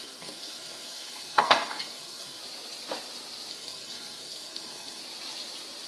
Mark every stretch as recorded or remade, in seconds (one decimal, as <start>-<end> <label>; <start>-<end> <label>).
0.0-2.4 remade; 2.4-3.5 recorded; 3.5-5.0 remade; 5.0-5.9 recorded